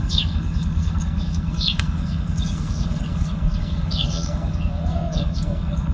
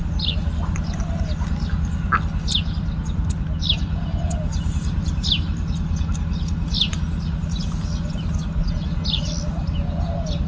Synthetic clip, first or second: first